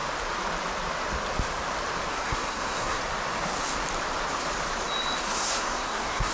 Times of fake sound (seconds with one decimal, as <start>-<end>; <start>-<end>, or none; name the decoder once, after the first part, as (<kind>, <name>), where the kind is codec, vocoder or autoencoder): 2.1-3.0 (codec, SNAC); 5.2-6.3